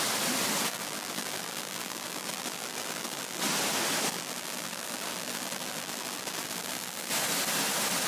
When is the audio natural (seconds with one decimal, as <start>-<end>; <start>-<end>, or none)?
0.0-0.7; 3.4-4.1; 7.1-8.1

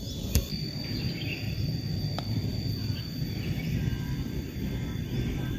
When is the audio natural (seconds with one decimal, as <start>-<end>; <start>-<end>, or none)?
0.0-0.5; 2.5-5.6

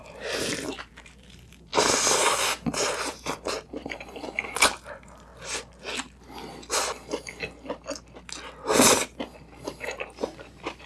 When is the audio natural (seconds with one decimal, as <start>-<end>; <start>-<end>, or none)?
1.7-2.3; 5.3-9.4

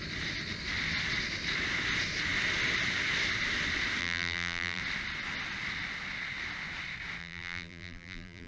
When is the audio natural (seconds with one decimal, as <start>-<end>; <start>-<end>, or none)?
0.0-4.0; 4.8-7.2

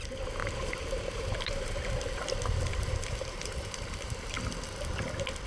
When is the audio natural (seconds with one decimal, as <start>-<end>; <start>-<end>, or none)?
0.0-0.4; 2.0-2.7; 4.3-5.5

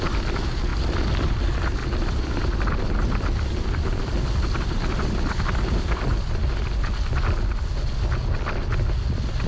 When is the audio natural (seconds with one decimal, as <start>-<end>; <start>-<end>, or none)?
0.0-0.7; 1.2-1.8; 6.5-9.5

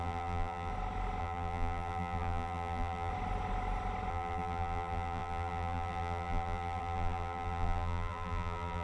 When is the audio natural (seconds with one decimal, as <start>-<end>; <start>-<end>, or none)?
0.7-1.2; 3.1-4.1

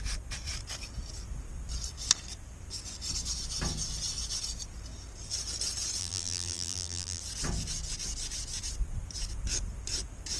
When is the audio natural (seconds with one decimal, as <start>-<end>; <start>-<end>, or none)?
0.0-6.0; 7.2-10.4